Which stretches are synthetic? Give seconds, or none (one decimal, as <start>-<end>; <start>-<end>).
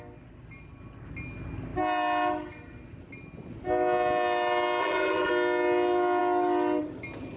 4.8-5.3